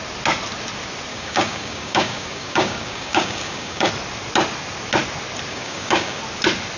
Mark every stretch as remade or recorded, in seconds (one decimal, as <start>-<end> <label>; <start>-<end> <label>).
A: 0.0-1.1 recorded; 1.1-3.9 remade; 3.9-5.5 recorded; 5.5-6.2 remade; 6.2-6.8 recorded